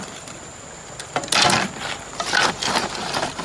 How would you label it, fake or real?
real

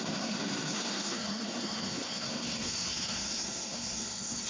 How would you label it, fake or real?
fake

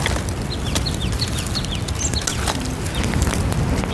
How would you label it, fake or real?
real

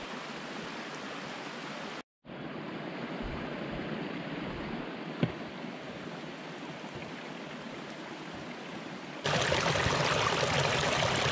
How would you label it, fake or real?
real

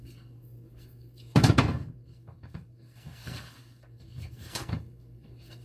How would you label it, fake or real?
fake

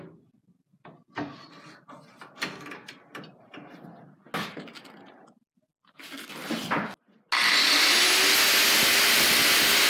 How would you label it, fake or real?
real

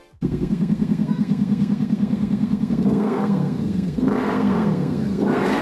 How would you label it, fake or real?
fake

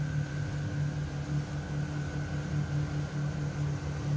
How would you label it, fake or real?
real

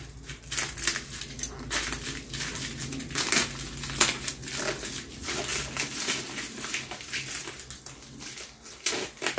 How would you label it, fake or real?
real